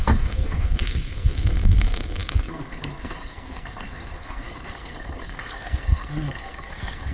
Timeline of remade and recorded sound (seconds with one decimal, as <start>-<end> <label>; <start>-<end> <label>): 0.0-7.1 remade